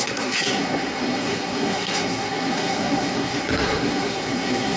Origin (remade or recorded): remade